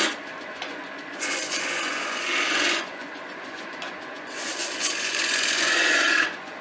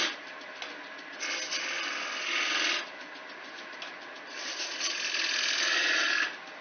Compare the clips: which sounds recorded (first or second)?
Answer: second